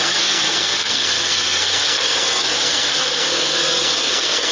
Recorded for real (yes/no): no